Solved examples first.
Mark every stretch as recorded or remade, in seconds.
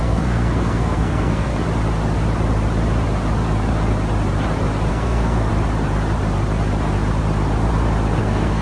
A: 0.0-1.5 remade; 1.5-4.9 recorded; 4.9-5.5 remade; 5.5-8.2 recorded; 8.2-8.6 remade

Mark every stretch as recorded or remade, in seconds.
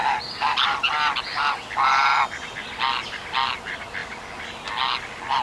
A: 0.0-5.4 recorded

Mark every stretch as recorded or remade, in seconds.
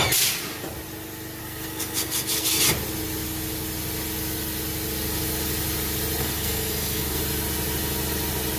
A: 0.0-1.4 recorded; 1.4-2.6 remade; 2.6-6.2 recorded; 6.2-7.2 remade; 7.2-8.6 recorded